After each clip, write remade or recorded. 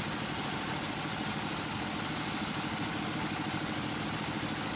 recorded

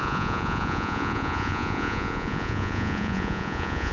remade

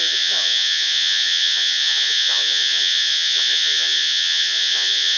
remade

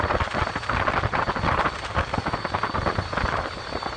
recorded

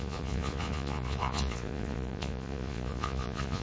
remade